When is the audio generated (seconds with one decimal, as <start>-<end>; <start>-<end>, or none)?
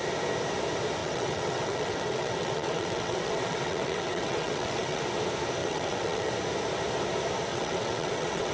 1.0-5.0; 5.6-6.3; 7.5-8.5